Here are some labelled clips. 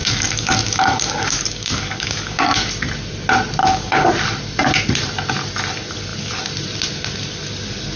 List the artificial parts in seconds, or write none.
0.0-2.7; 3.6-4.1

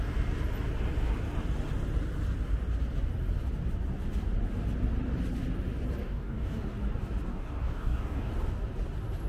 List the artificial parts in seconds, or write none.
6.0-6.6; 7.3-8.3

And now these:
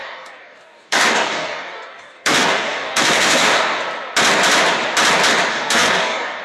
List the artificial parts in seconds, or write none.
0.0-3.8; 5.5-6.4